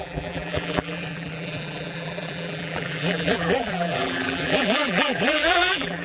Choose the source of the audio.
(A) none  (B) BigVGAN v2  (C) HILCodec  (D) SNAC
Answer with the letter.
B